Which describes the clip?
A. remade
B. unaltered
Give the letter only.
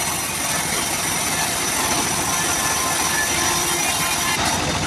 B